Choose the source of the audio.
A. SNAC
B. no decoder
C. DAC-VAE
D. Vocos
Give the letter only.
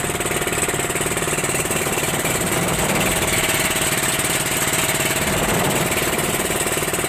B